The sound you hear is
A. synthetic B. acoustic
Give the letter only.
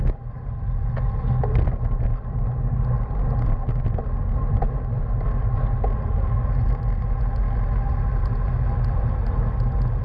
B